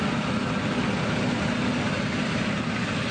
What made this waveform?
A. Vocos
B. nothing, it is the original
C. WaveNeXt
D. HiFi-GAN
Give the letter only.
B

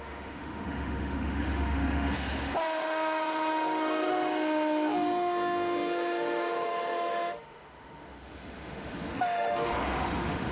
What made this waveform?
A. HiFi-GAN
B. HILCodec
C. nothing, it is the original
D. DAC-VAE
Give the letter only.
D